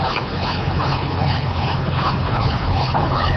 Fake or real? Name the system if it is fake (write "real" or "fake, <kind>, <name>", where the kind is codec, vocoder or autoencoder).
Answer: fake, codec, HILCodec